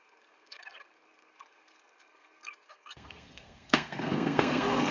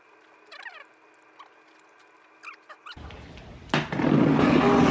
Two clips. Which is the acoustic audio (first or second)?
second